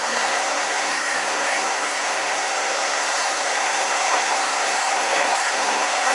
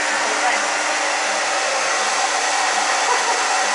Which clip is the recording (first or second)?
second